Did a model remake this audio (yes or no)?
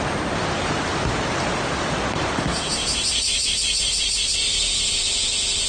no